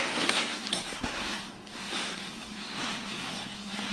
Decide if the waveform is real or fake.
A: fake